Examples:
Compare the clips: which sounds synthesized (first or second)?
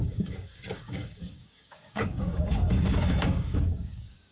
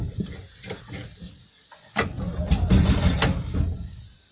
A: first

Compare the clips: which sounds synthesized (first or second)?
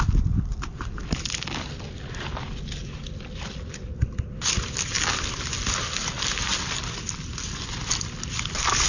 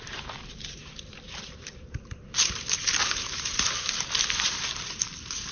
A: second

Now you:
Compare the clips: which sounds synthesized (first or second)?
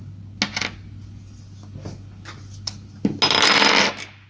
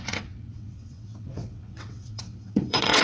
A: second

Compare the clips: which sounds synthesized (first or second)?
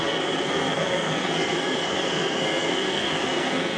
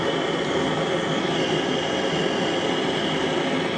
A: first